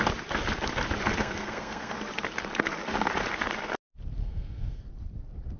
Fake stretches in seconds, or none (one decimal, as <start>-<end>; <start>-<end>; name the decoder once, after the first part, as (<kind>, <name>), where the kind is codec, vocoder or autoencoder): 1.2-1.9 (codec, SNAC); 4.2-4.8

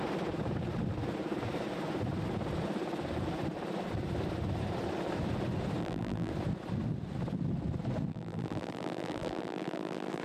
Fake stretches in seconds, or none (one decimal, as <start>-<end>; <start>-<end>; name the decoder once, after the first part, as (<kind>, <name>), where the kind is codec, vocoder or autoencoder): 5.8-6.3 (vocoder, BigVGAN v2); 8.1-10.2

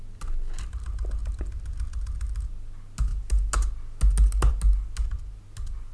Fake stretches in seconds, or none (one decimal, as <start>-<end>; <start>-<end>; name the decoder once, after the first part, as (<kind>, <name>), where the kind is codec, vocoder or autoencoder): none

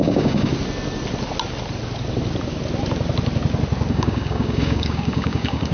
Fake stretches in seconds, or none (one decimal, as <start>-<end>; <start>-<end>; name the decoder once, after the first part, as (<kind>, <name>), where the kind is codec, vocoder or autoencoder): 0.0-0.5 (codec, DAC); 3.9-5.7

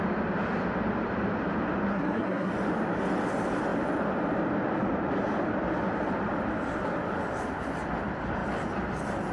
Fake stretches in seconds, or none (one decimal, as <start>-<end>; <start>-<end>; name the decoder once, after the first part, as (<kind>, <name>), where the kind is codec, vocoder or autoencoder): 1.9-2.5 (codec, SNAC)